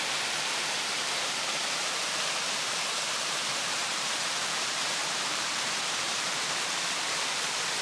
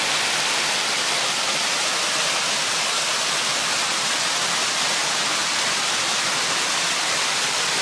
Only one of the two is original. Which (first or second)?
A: second